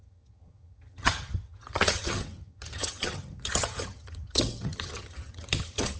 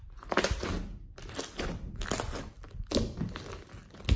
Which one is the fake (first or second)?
first